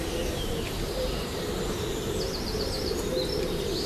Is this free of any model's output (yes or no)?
no